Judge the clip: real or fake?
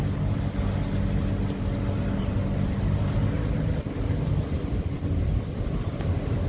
real